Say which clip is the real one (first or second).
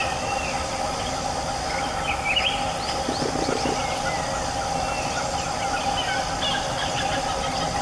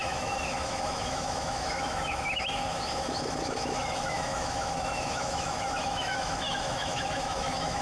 first